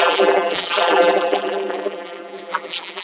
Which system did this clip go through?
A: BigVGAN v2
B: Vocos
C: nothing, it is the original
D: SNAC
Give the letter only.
A